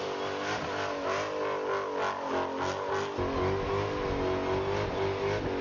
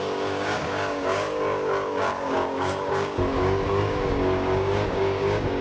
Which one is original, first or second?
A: first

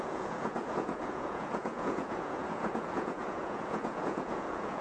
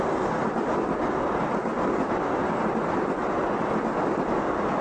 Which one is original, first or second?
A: second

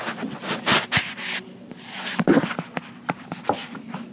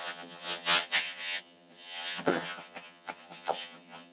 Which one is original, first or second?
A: first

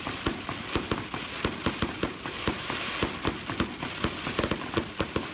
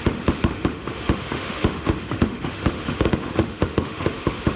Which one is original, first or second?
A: first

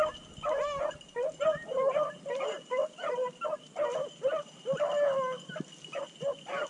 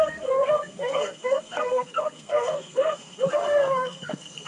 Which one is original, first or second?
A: first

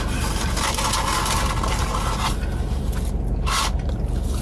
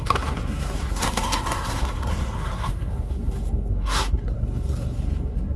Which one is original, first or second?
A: first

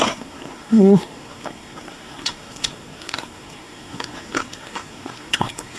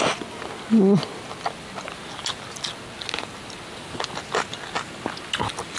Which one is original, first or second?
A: second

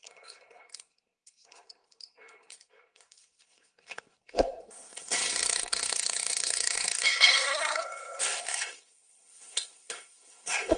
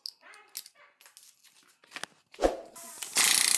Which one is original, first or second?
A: second